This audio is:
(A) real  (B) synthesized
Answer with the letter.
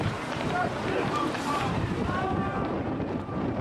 B